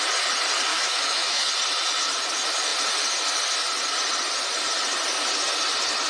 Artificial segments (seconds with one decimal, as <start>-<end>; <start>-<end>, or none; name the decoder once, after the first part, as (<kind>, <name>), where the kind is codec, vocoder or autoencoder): 0.7-1.5 (autoencoder, DAC-VAE)